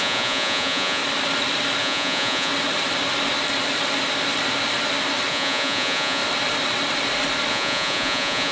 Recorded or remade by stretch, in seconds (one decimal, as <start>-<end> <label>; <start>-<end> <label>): 0.0-1.0 remade; 1.0-1.8 recorded; 1.8-2.5 remade; 2.5-5.3 recorded; 5.3-6.2 remade; 6.2-7.5 recorded; 7.5-8.5 remade

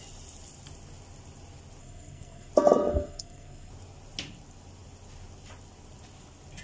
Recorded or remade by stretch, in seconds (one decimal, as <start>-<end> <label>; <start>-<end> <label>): 0.0-1.8 recorded; 1.8-2.5 remade; 2.5-2.9 recorded; 2.9-3.7 remade; 3.7-6.6 recorded